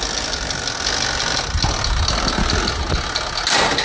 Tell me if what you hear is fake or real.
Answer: real